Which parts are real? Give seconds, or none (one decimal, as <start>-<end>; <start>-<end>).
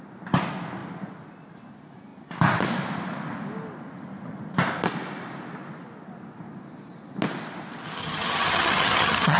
0.0-8.0